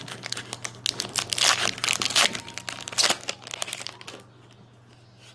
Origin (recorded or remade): recorded